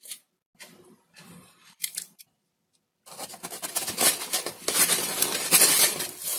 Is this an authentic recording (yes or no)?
yes